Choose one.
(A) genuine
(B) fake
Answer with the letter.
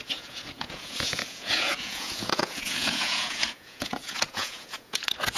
B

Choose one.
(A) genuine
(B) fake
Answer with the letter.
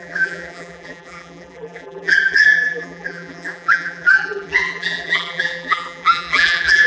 B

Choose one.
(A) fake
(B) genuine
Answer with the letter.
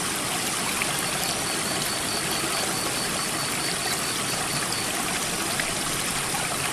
B